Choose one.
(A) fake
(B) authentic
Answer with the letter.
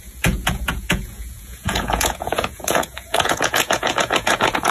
A